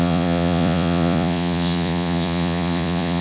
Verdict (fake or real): fake